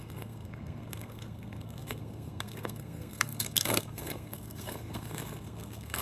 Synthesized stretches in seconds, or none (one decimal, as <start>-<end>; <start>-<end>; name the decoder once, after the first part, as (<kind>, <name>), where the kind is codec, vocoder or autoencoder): 0.0-6.0 (codec, SNAC)

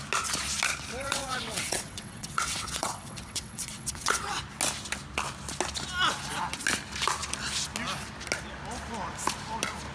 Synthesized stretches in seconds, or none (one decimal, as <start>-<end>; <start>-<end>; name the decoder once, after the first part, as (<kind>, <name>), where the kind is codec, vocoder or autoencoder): 1.0-4.4 (vocoder, WaveNeXt)

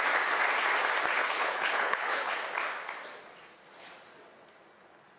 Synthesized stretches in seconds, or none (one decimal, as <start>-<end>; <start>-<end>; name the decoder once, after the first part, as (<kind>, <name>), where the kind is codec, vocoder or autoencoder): 1.2-2.4 (codec, HILCodec)

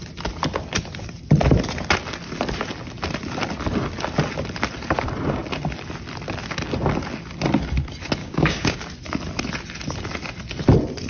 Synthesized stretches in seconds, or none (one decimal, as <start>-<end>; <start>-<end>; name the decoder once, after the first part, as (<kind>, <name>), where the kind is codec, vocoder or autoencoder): 8.2-8.8 (codec, DAC)

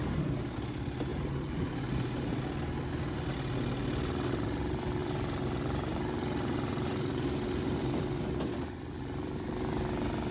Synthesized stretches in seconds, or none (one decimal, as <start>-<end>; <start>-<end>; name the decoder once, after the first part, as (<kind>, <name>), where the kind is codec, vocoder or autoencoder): 1.1-2.4 (vocoder, BigVGAN v2); 5.0-8.8